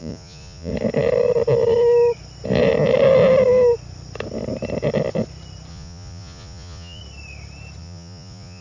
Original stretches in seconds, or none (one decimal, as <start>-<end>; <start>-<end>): 0.7-5.7; 7.0-7.8